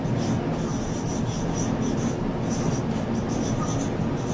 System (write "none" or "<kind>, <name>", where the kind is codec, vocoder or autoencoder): none